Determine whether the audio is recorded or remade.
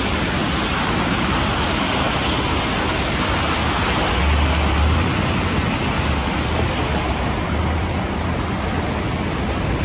recorded